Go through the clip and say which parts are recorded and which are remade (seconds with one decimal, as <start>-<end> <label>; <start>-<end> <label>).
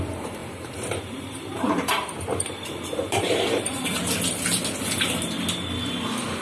0.0-4.0 remade; 4.0-6.4 recorded